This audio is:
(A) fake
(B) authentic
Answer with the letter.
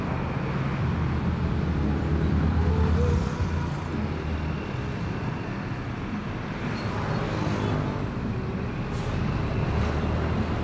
B